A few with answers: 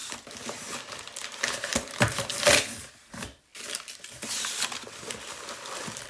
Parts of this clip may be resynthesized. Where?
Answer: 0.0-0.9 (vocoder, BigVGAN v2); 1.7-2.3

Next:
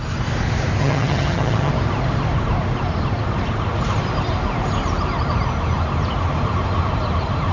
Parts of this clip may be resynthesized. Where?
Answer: 0.8-1.7 (vocoder, HiFi-GAN)

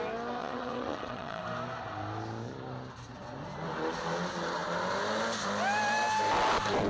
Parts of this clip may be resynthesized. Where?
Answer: 0.4-1.4 (vocoder, Vocos)

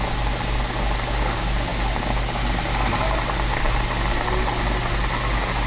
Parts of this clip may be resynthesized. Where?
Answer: none

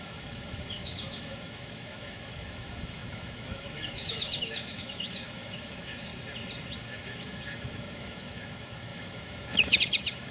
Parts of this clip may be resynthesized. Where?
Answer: 0.0-6.1 (autoencoder, DAC-VAE); 6.7-10.3

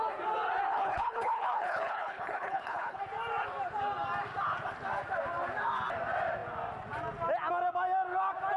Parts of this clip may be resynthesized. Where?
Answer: 0.7-3.0 (codec, HILCodec)